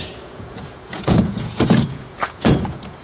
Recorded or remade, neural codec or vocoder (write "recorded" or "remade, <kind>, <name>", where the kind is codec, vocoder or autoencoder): remade, vocoder, Vocos